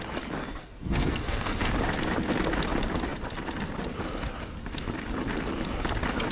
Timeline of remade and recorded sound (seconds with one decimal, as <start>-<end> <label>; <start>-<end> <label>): 0.0-0.4 recorded; 0.4-1.7 remade; 1.7-6.3 recorded